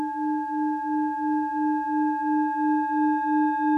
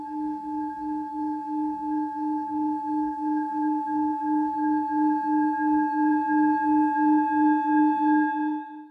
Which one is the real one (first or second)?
first